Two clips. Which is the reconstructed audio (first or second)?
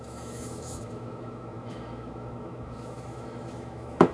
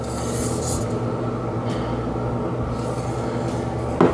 first